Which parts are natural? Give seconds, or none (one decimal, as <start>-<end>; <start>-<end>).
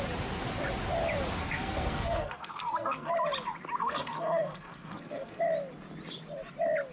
0.0-1.4; 3.1-3.8; 5.4-6.9